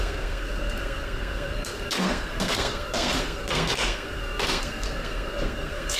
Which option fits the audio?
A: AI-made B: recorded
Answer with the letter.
A